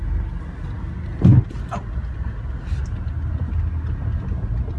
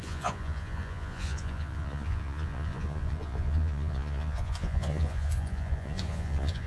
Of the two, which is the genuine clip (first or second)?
first